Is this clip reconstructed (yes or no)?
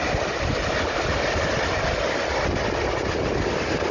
no